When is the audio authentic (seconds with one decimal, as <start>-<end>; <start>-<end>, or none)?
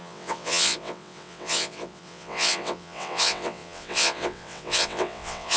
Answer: none